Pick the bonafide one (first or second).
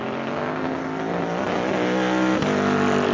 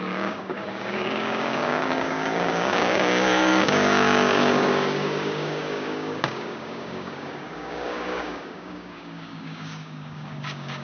first